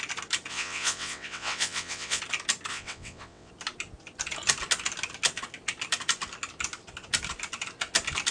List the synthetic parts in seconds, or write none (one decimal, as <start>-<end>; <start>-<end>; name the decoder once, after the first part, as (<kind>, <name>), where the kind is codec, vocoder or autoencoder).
0.5-2.2 (vocoder, WaveNeXt); 2.7-3.5